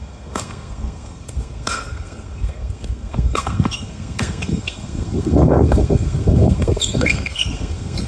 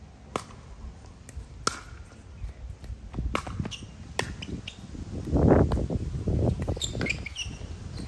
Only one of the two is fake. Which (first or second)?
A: first